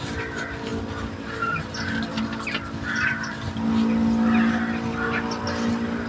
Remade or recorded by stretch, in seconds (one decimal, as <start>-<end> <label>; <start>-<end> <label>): 0.0-6.1 recorded